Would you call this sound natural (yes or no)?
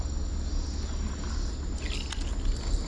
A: yes